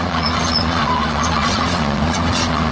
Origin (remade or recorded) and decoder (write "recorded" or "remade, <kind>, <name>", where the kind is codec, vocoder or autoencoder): remade, vocoder, Vocos